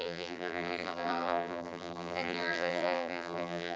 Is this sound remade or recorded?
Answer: remade